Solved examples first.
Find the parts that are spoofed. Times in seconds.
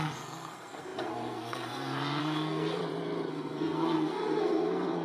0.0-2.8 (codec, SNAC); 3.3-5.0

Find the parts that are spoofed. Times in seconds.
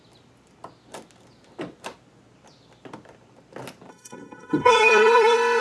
3.9-5.6 (codec, SNAC)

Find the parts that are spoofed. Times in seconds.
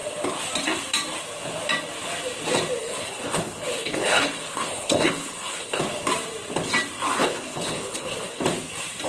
2.8-5.8 (codec, HILCodec); 7.2-8.4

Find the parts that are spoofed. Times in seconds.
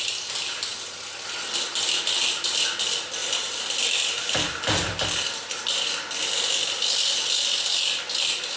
none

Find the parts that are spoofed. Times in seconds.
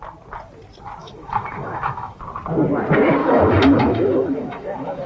1.0-2.2 (autoencoder, DAC-VAE); 3.2-5.1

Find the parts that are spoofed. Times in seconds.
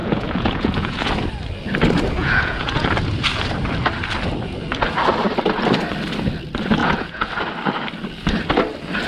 0.0-1.1 (vocoder, Vocos); 2.2-2.9; 6.8-7.3